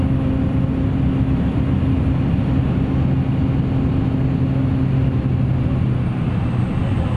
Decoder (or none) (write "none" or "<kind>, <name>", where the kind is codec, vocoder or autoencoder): none